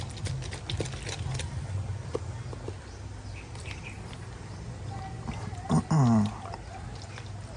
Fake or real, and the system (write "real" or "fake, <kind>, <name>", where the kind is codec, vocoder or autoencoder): real